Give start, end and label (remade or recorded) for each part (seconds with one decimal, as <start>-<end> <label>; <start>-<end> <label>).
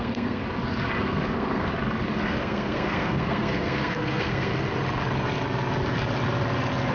0.0-0.4 remade; 0.4-1.0 recorded; 1.0-1.7 remade; 1.7-2.3 recorded; 2.3-4.5 remade; 4.5-6.9 recorded